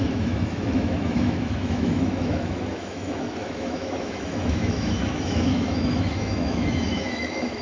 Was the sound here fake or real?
fake